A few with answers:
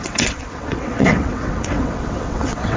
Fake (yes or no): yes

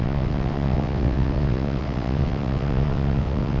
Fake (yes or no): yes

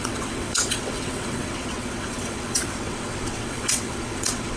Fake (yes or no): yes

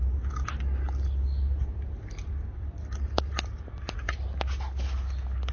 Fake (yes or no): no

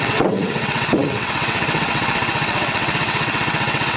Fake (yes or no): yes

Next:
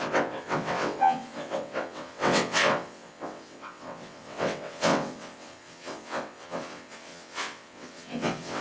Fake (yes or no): yes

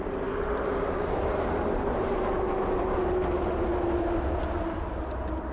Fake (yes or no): no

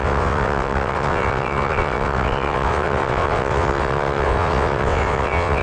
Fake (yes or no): yes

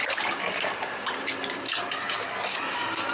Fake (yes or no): no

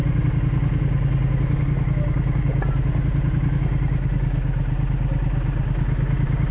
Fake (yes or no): no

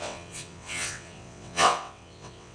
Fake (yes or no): yes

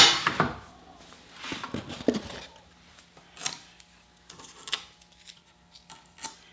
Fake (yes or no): no